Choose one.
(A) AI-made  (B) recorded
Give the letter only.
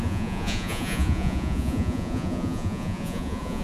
A